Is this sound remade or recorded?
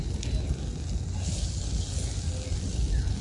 recorded